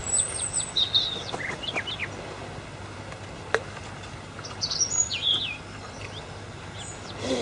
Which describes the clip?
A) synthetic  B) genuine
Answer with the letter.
B